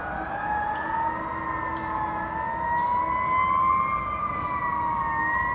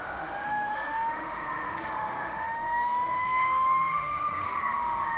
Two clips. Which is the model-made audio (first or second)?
second